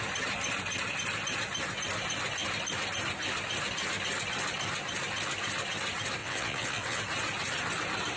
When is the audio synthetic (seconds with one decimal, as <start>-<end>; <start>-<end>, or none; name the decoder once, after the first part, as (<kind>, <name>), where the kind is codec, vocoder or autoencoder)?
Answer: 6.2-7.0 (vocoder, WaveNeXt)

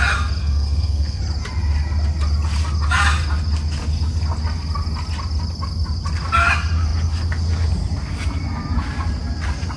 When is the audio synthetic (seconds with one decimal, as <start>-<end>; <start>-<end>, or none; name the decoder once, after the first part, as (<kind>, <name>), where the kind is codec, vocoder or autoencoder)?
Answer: 0.4-1.2 (codec, SNAC)

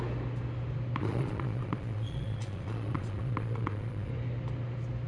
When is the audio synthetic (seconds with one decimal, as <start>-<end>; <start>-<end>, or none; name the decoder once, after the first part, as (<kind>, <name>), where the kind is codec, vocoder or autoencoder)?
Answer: 1.0-4.1 (vocoder, Vocos)

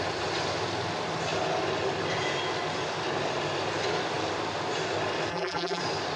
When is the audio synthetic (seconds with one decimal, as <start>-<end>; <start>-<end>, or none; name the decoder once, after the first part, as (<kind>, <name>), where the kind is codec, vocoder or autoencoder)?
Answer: 5.3-5.8 (vocoder, BigVGAN v2)